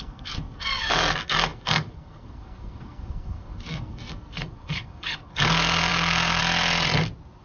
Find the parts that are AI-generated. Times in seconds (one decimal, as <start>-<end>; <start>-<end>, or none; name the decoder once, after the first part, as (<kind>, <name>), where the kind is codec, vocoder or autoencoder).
0.0-6.4 (codec, SNAC)